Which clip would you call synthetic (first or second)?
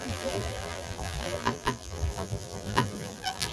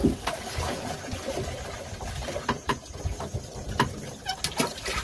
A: first